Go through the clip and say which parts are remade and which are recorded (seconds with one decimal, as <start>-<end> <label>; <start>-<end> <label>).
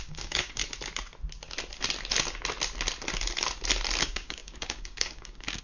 0.0-0.6 remade; 0.6-4.0 recorded; 4.0-5.6 remade